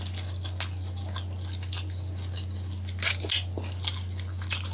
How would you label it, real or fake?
real